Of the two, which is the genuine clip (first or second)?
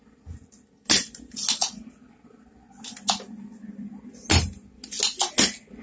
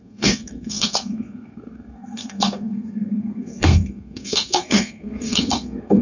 first